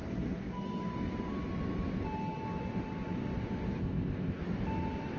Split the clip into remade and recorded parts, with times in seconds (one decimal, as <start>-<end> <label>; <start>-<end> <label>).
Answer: 0.0-3.8 recorded; 3.8-4.4 remade; 4.4-5.2 recorded